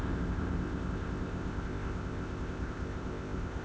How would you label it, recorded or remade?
remade